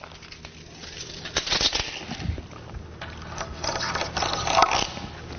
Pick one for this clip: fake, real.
real